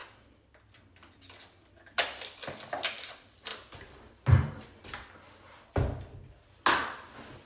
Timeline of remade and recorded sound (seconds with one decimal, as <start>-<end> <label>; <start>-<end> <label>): 0.0-7.5 recorded